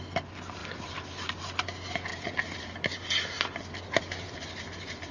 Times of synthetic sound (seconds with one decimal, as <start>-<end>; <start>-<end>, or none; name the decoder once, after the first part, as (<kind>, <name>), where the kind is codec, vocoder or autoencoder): none